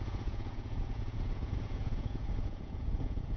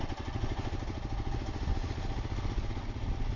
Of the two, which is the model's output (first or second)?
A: first